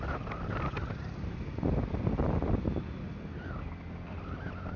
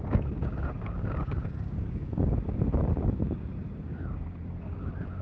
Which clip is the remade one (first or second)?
second